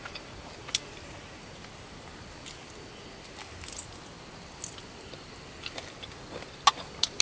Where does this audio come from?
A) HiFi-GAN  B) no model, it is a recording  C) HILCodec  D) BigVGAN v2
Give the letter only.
B